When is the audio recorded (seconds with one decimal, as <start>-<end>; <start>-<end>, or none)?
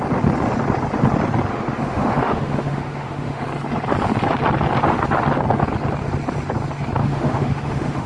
0.0-1.5; 3.4-7.0